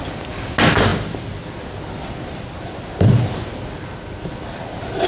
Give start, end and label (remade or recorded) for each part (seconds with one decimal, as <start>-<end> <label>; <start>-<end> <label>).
0.0-5.1 recorded